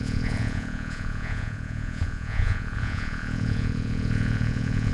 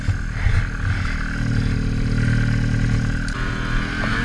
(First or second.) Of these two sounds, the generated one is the first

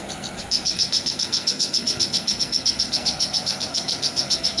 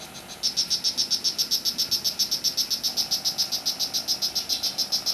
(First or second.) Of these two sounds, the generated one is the first